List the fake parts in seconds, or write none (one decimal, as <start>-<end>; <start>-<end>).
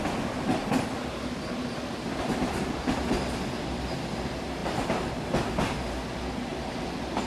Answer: none